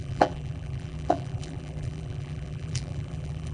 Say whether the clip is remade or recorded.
remade